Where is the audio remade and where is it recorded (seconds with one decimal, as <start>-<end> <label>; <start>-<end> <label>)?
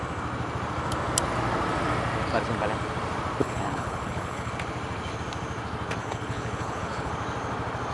0.0-3.4 recorded; 3.4-4.5 remade; 4.5-6.0 recorded; 6.0-7.1 remade; 7.1-7.9 recorded